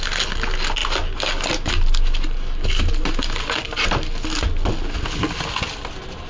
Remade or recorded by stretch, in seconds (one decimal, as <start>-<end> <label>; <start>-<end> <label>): 0.0-6.3 recorded